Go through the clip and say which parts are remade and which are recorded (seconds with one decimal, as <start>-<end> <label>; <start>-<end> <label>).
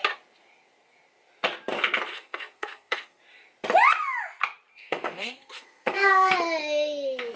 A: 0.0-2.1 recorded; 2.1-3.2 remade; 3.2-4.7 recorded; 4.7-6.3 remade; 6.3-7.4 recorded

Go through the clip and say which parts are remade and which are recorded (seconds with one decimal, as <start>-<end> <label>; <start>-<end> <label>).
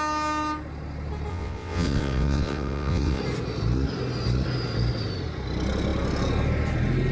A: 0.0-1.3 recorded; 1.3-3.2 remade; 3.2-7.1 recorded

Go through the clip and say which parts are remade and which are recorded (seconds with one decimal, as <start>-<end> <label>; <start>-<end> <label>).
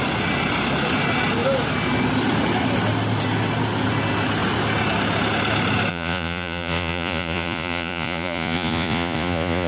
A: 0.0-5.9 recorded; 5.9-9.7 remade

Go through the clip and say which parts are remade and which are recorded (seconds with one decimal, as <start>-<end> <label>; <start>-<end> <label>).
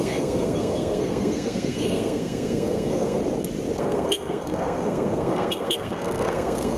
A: 0.0-3.2 remade; 3.2-3.8 recorded; 3.8-6.8 remade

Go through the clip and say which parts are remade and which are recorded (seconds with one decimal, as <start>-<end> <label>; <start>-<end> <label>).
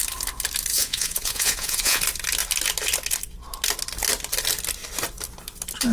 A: 0.0-0.7 recorded; 0.7-2.0 remade; 2.0-5.9 recorded